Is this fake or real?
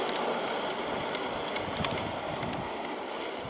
fake